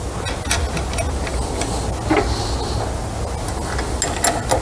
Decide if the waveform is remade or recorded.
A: recorded